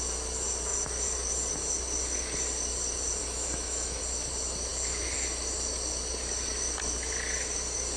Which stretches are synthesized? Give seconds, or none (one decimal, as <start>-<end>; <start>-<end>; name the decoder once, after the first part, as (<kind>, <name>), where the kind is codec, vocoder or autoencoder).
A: 3.2-4.0 (autoencoder, DAC-VAE)